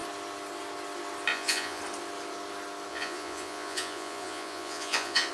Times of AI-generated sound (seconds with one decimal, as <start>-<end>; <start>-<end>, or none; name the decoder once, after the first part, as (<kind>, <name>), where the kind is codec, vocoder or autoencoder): 1.3-1.8 (vocoder, Vocos); 2.9-5.3